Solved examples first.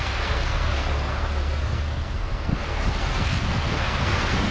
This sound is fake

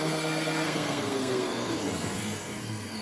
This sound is fake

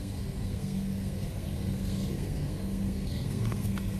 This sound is fake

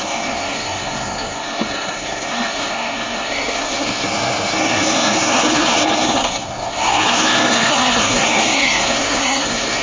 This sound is fake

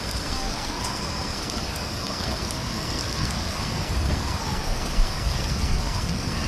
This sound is fake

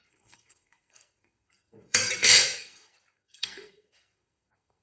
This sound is fake